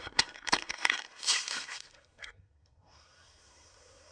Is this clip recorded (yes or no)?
no